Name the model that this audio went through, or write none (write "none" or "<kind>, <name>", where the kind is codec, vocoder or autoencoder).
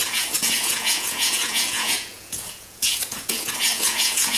vocoder, Vocos